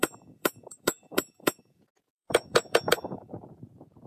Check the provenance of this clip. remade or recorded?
remade